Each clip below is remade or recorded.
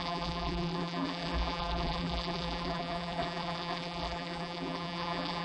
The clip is remade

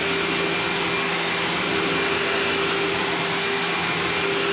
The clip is recorded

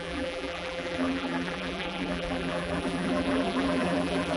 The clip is remade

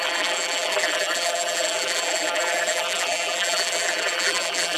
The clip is remade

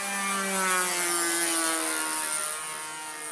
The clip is recorded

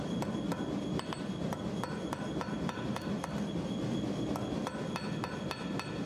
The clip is recorded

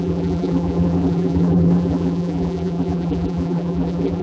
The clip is remade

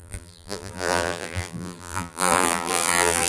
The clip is remade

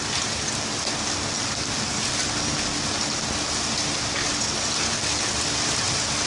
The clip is recorded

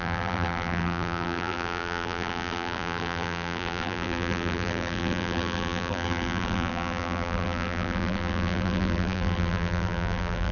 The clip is remade